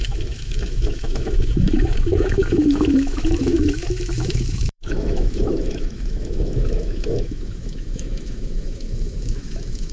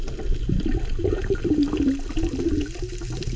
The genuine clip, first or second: second